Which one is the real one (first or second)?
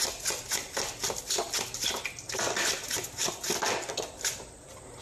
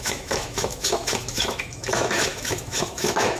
first